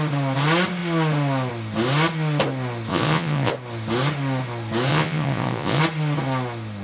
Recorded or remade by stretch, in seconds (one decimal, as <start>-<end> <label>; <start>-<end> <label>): 0.0-2.9 recorded; 2.9-3.5 remade; 3.5-4.9 recorded; 4.9-5.8 remade; 5.8-6.8 recorded